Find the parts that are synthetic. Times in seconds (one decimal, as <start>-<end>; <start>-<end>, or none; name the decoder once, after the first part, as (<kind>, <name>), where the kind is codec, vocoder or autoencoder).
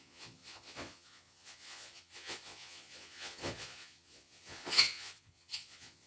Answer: 0.0-6.1 (vocoder, Vocos)